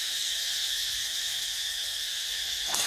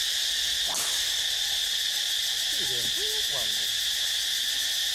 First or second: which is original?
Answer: second